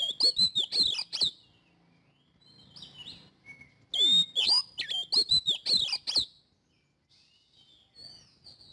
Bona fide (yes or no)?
yes